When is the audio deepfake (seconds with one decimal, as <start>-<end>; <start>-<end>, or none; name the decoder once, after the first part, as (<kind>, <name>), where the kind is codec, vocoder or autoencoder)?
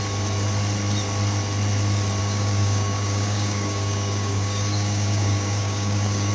2.2-6.3 (codec, DAC)